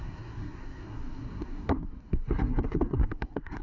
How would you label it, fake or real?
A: fake